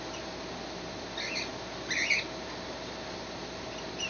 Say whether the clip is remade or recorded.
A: recorded